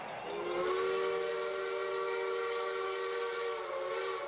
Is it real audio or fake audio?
real